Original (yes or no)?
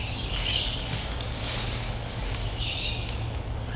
no